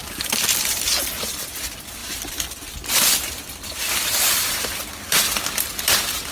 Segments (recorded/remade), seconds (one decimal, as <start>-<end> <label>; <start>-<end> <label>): 0.0-0.7 remade; 0.7-2.0 recorded; 2.0-5.2 remade; 5.2-6.3 recorded